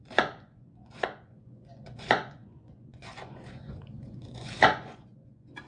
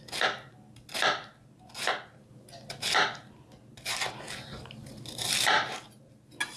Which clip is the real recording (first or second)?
second